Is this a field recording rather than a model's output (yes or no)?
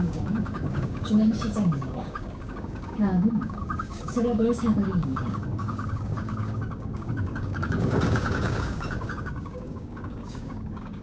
no